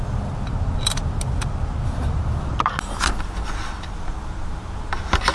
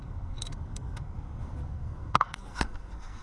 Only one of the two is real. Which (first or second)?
first